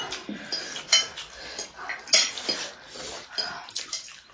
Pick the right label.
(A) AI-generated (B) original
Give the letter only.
A